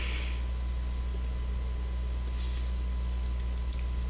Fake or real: real